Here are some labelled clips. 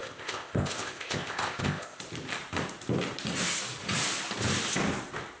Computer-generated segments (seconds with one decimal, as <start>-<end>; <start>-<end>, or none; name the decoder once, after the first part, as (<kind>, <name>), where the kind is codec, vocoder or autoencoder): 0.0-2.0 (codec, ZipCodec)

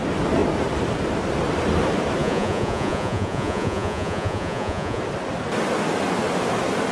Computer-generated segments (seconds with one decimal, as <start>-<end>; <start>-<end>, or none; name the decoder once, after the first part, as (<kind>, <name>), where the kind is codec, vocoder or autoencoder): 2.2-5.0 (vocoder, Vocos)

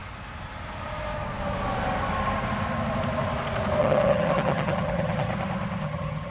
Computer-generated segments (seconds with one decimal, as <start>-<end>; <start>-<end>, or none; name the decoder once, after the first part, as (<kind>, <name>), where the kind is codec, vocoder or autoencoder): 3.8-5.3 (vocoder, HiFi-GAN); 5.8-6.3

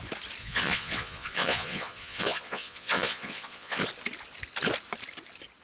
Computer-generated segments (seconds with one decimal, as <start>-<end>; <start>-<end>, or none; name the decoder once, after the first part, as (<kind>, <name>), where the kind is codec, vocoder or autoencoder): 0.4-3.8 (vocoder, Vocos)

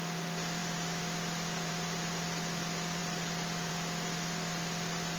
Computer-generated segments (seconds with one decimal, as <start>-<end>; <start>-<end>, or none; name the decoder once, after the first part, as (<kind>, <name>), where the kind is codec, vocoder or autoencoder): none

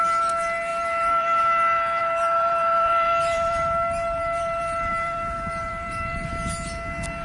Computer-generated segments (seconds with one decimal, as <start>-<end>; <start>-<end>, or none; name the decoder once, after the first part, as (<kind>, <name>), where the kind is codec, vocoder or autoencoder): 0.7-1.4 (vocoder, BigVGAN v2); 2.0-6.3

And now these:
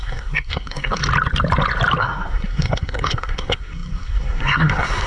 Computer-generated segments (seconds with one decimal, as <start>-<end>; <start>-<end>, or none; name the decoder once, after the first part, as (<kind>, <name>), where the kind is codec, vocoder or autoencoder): 0.0-1.0 (codec, SNAC); 2.0-5.1